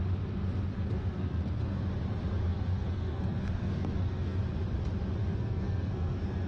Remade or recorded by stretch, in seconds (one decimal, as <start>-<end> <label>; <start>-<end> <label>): 0.0-0.7 recorded; 0.7-1.8 remade; 1.8-2.5 recorded; 2.5-4.4 remade; 4.4-5.2 recorded; 5.2-6.5 remade